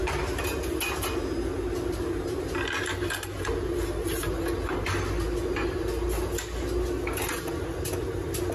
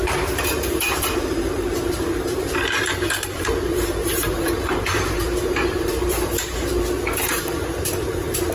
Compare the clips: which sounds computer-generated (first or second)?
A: second